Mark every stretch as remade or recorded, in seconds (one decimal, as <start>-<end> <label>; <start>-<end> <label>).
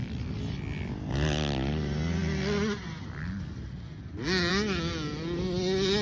0.0-6.0 recorded